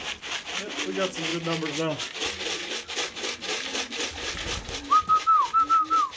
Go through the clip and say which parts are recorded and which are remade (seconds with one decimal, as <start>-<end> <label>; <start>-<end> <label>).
0.0-6.2 recorded